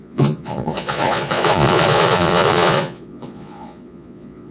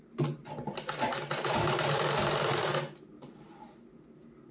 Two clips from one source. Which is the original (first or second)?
second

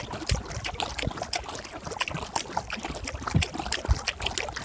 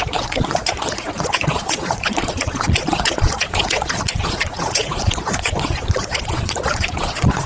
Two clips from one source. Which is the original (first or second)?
first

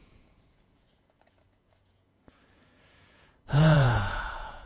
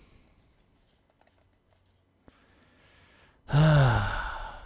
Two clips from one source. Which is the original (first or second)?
second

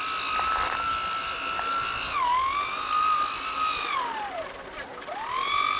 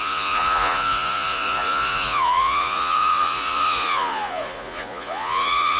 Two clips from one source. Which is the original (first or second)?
first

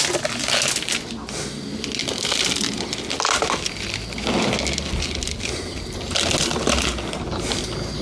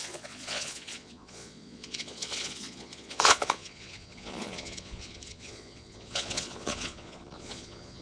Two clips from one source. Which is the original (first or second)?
first